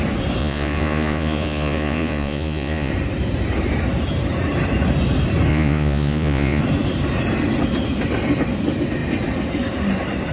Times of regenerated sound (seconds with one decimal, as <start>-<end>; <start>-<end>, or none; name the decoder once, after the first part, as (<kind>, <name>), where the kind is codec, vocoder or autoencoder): 0.4-2.9 (vocoder, Vocos); 5.5-6.6